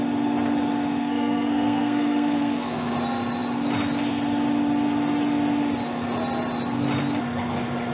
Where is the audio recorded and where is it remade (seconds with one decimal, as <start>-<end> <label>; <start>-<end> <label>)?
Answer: 0.0-1.0 recorded; 1.0-2.9 remade; 2.9-7.9 recorded